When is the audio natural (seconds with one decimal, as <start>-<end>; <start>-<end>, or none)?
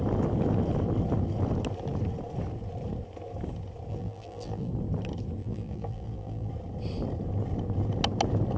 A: 0.0-3.9; 4.7-5.4; 6.5-8.6